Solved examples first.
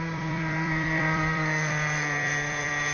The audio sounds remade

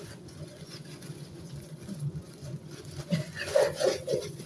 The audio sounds remade